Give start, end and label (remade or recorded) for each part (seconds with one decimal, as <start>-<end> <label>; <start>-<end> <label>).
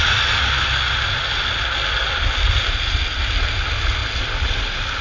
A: 0.0-5.0 recorded